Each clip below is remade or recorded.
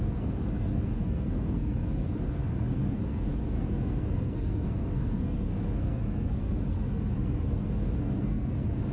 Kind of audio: remade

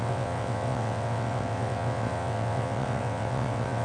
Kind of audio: remade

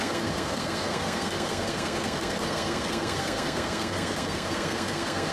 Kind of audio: remade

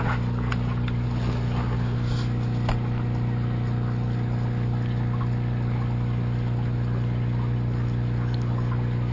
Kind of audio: recorded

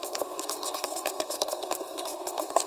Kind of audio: remade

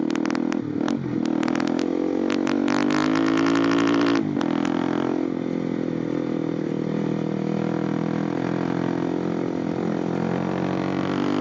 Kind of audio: recorded